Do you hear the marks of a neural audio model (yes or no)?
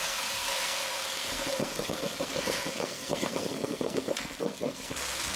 yes